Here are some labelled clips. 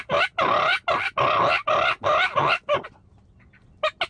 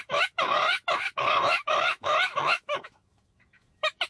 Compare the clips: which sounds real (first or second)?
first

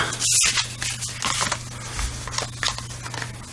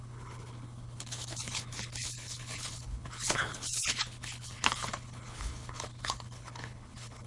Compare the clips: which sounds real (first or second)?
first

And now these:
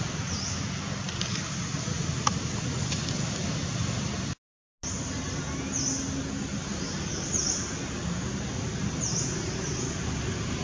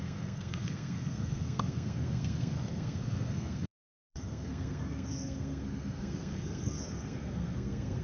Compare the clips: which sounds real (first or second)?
first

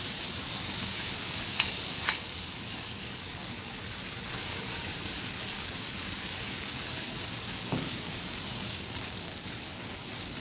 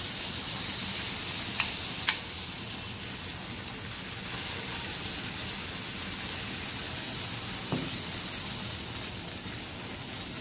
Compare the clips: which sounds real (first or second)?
second